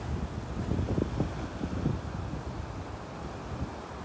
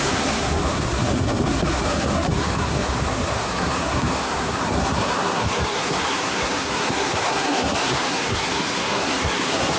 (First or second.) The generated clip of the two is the second